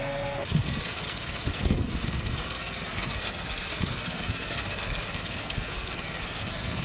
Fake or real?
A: fake